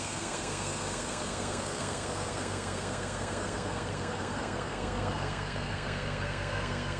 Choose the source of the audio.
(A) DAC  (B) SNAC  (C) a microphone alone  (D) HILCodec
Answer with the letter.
B